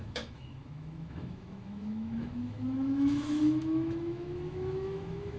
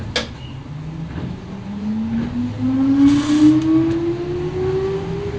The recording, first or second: second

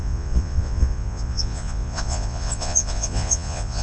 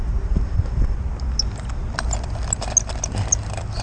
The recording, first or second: second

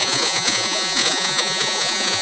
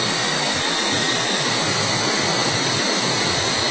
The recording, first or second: second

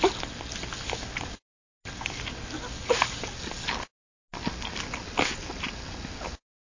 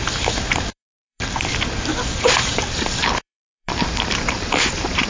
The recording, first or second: first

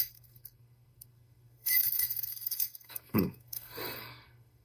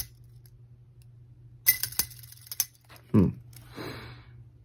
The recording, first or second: second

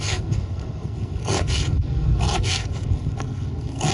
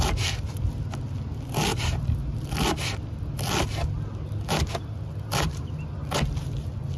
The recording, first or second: second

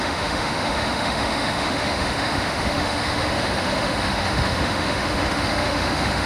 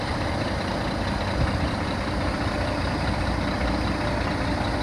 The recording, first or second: second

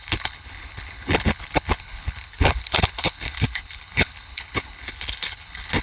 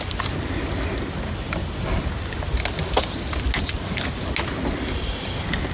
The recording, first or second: second